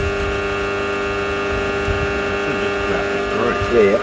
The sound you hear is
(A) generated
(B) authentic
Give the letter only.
B